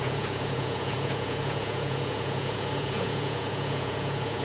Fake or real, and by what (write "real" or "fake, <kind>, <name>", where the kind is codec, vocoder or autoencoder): fake, vocoder, Vocos